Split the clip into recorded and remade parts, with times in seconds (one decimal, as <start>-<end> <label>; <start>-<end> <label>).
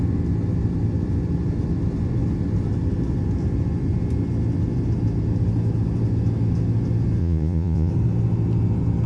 0.0-7.2 recorded; 7.2-7.9 remade; 7.9-9.1 recorded